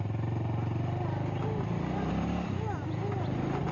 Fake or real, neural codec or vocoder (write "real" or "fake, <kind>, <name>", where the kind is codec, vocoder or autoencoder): real